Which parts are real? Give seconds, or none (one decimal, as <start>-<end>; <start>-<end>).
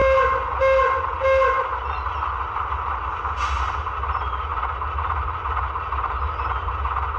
0.0-7.2